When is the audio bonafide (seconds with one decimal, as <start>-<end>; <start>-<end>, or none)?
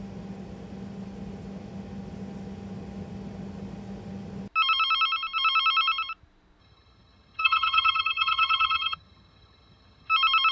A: 0.0-6.6; 10.1-10.5